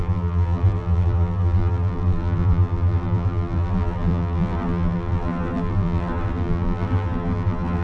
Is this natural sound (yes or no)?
no